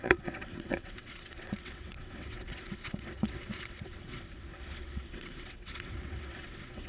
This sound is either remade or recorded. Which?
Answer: remade